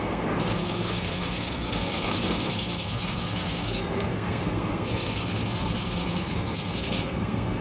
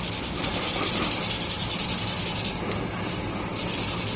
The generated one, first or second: first